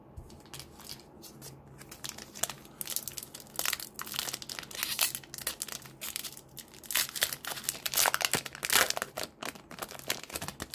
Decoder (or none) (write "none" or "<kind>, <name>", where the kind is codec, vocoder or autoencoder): none